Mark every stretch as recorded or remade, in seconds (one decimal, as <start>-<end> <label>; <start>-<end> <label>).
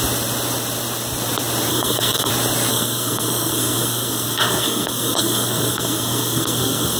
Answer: 0.0-1.7 recorded; 1.7-2.3 remade; 2.3-2.7 recorded; 2.7-7.0 remade